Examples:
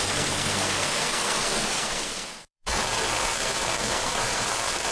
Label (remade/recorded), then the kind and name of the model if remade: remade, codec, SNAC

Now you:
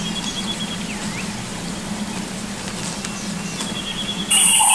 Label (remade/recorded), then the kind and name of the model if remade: recorded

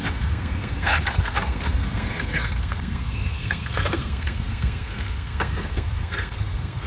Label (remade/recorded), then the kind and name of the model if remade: remade, codec, SNAC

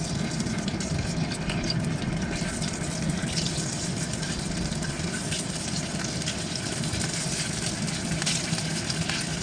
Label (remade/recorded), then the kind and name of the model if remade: recorded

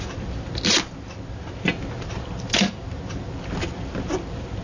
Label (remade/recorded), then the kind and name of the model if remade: recorded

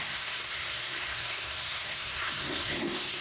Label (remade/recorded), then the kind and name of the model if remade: remade, codec, SNAC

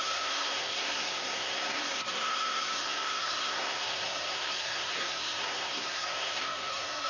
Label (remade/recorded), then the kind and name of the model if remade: remade, codec, SNAC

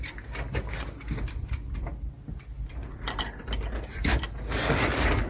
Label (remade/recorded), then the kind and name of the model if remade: recorded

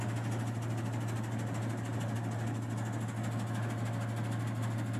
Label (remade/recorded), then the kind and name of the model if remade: recorded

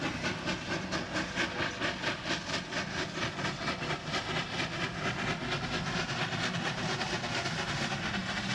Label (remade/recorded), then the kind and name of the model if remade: recorded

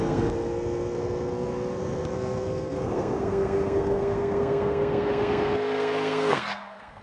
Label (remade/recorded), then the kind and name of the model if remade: remade, codec, SNAC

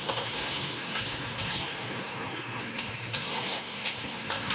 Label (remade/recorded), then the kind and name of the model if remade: remade, codec, SNAC